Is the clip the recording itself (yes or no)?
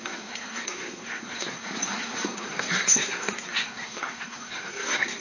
no